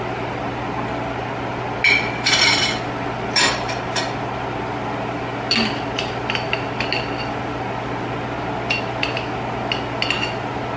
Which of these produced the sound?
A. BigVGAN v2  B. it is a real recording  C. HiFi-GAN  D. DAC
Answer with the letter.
B